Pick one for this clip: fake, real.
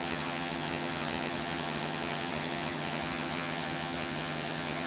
fake